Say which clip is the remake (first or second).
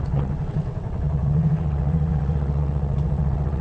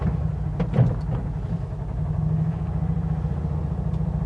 first